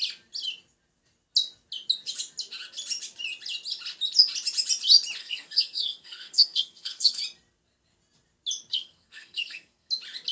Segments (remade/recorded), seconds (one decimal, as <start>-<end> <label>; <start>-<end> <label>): 0.0-5.2 recorded; 5.2-7.2 remade; 7.2-8.7 recorded; 8.7-9.9 remade; 9.9-10.3 recorded